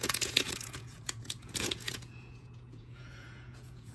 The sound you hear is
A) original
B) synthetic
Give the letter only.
B